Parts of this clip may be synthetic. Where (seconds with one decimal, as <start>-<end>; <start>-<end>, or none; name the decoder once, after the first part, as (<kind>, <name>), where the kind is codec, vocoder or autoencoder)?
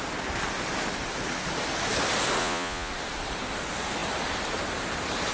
2.4-2.9 (vocoder, Vocos)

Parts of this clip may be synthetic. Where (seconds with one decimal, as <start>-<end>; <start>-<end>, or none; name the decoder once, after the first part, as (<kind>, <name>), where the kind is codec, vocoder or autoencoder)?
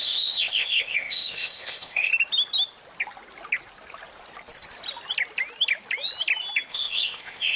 0.0-2.1 (codec, ZipCodec); 6.7-7.6